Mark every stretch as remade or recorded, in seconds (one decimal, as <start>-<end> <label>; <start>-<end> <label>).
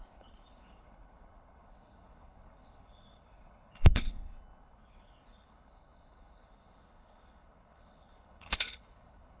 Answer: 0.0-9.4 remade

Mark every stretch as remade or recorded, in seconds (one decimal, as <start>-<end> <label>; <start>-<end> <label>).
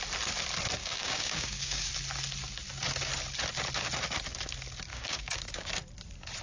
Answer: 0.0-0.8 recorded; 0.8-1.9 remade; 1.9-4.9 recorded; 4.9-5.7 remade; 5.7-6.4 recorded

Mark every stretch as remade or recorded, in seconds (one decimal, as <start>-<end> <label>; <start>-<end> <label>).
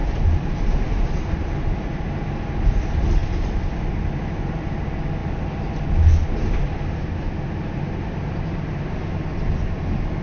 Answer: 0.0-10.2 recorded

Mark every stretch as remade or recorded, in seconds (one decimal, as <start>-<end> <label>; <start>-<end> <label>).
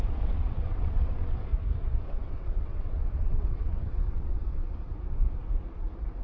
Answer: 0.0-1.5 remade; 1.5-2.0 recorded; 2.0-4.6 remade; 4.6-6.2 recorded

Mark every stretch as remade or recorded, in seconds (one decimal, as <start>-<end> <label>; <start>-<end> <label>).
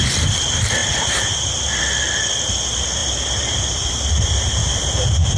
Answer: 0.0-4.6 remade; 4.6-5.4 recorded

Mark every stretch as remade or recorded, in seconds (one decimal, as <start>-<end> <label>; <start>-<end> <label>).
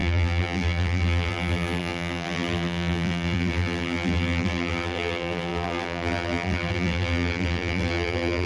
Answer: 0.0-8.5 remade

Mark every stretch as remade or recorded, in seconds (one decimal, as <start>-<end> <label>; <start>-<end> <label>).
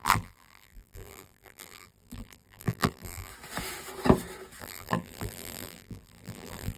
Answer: 0.0-3.3 remade; 3.3-4.6 recorded; 4.6-6.8 remade